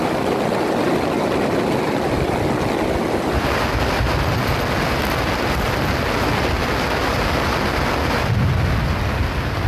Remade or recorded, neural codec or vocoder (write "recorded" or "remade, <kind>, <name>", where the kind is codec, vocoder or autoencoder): recorded